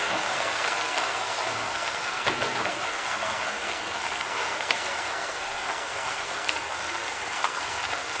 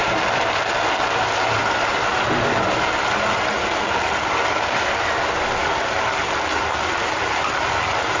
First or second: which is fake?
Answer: first